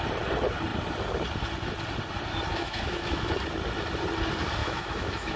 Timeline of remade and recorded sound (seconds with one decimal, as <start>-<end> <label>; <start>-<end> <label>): 0.0-2.5 recorded; 2.5-3.3 remade; 3.3-4.6 recorded; 4.6-5.4 remade